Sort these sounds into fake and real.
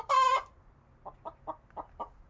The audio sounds real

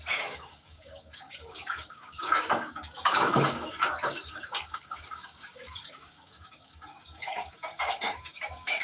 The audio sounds fake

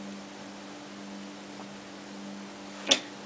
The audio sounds real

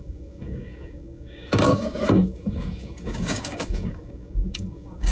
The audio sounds fake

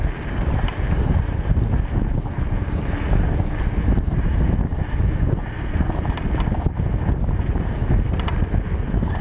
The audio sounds real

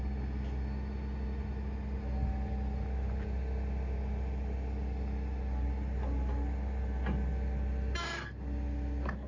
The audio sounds real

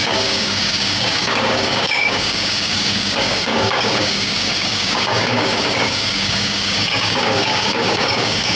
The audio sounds fake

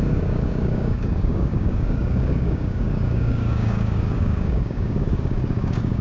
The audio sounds fake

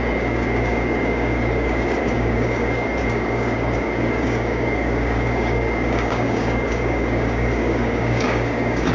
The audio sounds fake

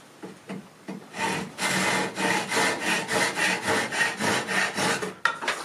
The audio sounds real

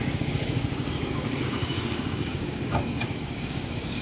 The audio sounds fake